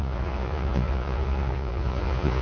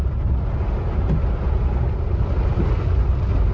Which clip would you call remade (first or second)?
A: first